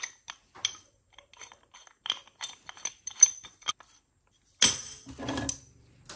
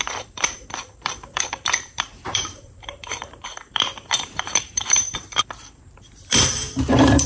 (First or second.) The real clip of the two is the first